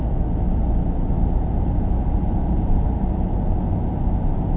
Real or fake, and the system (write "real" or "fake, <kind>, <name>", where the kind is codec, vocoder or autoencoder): real